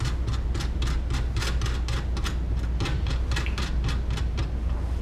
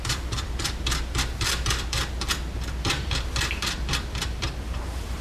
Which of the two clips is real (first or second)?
first